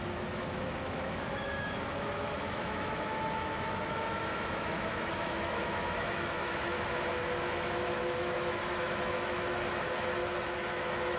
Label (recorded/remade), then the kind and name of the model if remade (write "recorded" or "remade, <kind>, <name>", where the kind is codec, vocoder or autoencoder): remade, autoencoder, DAC-VAE